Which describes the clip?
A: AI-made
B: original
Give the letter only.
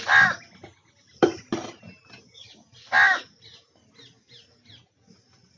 B